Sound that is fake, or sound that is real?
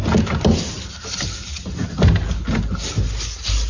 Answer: real